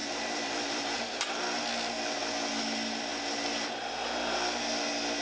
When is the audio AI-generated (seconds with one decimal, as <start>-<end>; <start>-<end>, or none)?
0.0-1.4

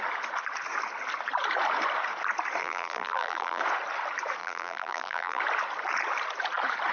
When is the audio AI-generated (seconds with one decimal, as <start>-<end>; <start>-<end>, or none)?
2.6-3.6; 4.4-5.4

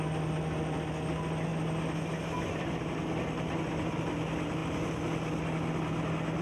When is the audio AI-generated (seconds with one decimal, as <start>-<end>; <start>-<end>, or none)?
none